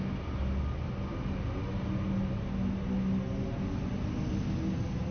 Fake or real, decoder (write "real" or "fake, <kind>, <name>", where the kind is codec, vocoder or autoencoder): real